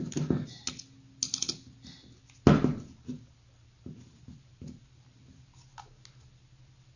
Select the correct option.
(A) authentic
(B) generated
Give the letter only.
A